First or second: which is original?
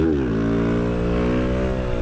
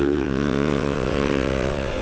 first